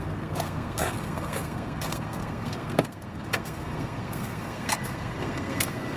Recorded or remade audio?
remade